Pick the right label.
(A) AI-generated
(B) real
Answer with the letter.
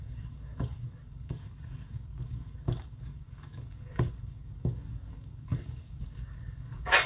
A